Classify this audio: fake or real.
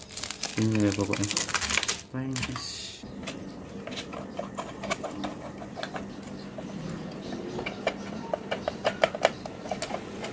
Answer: real